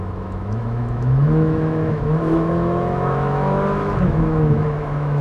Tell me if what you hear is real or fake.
fake